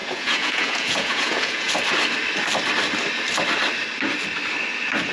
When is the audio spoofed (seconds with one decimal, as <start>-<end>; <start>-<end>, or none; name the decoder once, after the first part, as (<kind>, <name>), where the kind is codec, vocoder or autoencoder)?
0.0-1.7 (vocoder, Vocos)

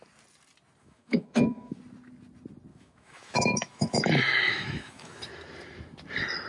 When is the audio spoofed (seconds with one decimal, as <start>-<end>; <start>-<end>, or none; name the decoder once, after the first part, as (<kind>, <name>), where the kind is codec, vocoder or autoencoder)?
0.8-1.8 (autoencoder, DAC-VAE); 2.7-5.2